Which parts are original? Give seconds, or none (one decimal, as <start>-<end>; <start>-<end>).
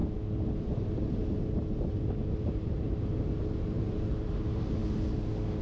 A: 0.0-0.6; 1.2-2.4; 4.8-5.6